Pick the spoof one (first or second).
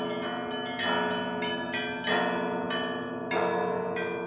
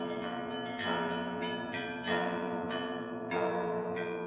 second